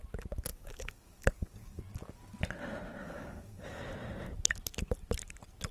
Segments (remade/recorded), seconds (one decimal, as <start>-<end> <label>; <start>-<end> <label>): 0.0-0.5 recorded; 0.5-1.8 remade; 1.8-3.0 recorded; 3.0-3.8 remade; 3.8-5.7 recorded